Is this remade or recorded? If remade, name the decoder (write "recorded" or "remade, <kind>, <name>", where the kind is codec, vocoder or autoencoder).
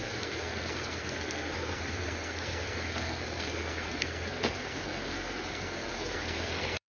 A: remade, codec, SNAC